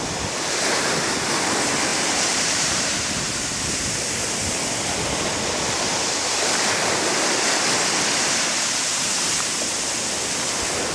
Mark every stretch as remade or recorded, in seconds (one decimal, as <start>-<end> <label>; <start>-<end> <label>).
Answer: 0.0-1.9 recorded; 1.9-4.1 remade; 4.1-8.9 recorded; 8.9-9.6 remade; 9.6-10.9 recorded